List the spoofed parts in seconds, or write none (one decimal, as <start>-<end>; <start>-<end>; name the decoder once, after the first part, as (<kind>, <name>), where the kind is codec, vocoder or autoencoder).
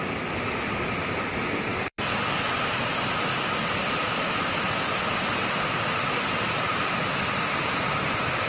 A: 1.7-2.5 (vocoder, BigVGAN v2); 3.8-7.8